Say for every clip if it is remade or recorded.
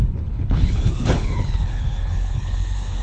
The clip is remade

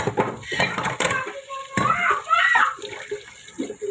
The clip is recorded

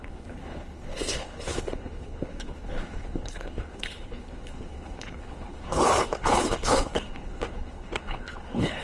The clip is remade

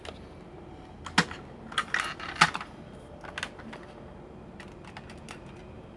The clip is recorded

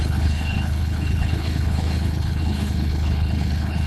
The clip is remade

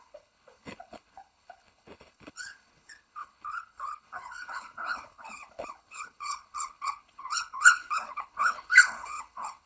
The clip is remade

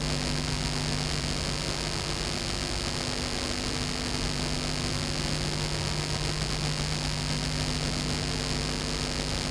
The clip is recorded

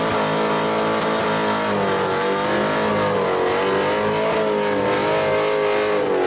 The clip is recorded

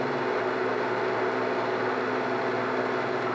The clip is recorded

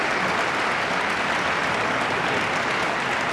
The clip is recorded